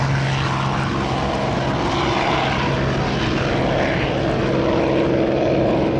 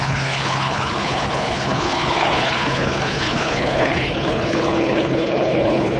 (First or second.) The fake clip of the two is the second